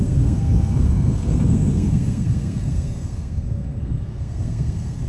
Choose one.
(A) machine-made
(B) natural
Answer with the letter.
A